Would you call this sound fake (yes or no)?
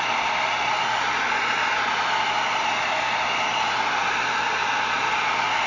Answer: no